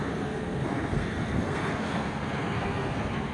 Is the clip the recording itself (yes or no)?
no